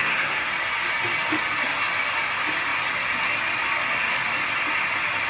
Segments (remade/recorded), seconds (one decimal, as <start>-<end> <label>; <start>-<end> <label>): 0.0-0.5 remade; 0.5-5.3 recorded